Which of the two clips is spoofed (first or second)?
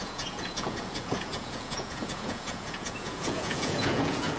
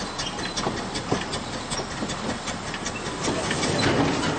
first